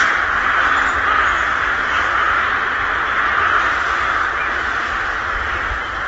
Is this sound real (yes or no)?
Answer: no